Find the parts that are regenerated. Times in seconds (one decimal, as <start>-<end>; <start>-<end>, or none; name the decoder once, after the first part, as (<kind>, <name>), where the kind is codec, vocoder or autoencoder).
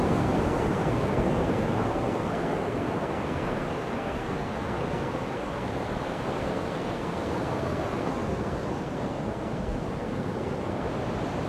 0.0-10.9 (codec, SNAC)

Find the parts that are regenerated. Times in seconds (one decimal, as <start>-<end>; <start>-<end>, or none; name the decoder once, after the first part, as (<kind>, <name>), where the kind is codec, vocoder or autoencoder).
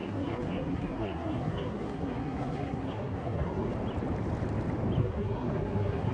0.0-3.7 (codec, SNAC); 5.0-6.1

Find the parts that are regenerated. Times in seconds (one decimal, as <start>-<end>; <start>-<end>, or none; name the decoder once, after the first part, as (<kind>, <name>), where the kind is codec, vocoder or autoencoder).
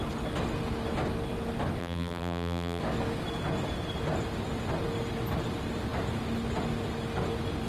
1.8-2.8 (vocoder, BigVGAN v2)